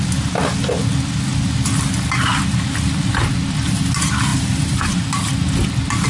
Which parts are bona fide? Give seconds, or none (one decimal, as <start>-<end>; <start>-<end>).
0.0-4.3; 5.5-6.1